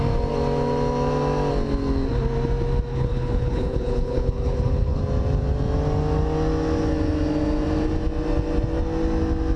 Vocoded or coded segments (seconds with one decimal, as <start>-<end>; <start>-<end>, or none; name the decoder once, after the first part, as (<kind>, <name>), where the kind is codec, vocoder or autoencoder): 2.9-5.0 (codec, HILCodec)